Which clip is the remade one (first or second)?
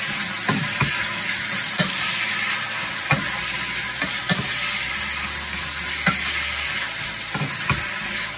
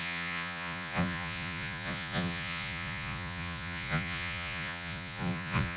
second